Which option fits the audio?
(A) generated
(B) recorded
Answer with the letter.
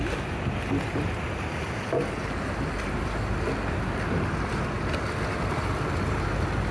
B